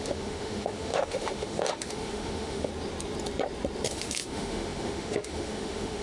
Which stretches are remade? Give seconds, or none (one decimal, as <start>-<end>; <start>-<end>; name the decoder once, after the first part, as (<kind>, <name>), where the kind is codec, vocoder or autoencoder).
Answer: 0.0-2.7 (autoencoder, DAC-VAE); 3.9-6.0